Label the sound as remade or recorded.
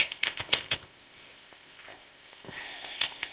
remade